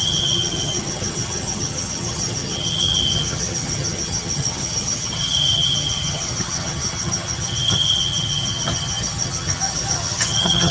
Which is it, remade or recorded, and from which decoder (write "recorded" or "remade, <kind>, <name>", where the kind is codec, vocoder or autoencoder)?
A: remade, vocoder, HiFi-GAN